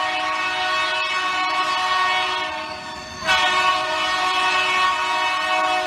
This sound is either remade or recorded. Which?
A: recorded